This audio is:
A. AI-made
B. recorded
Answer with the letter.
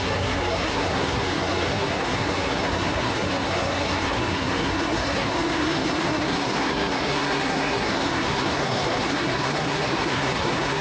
A